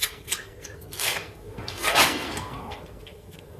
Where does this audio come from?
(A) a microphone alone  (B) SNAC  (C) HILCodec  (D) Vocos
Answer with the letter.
B